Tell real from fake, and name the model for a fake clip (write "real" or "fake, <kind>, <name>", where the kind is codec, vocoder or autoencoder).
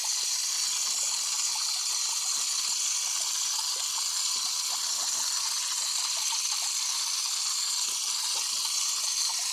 real